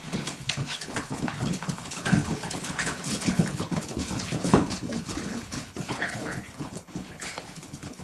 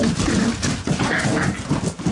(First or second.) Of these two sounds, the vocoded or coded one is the first